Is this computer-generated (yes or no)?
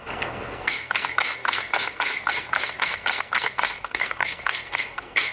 yes